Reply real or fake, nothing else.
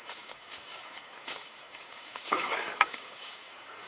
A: fake